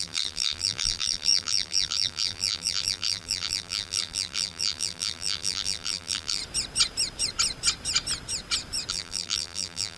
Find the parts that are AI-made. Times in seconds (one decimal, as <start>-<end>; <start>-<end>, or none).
0.0-6.4; 8.9-10.0